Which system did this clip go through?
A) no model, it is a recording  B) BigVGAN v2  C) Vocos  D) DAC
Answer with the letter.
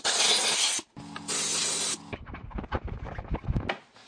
A